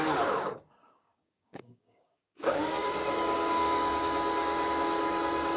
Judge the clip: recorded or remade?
remade